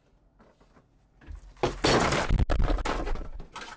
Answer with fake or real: real